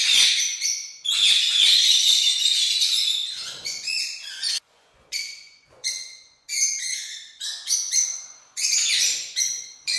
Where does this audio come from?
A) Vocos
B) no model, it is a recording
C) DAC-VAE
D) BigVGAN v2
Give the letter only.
A